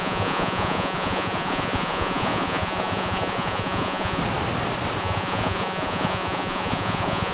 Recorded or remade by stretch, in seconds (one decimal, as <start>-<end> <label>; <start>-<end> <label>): 0.0-4.2 remade; 4.2-5.0 recorded; 5.0-7.3 remade